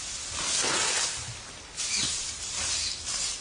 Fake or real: real